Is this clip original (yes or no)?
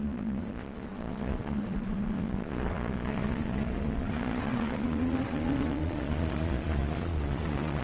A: no